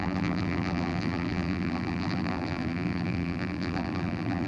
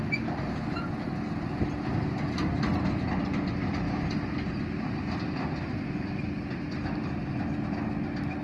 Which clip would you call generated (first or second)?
first